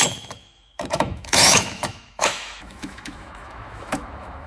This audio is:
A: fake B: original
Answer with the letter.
A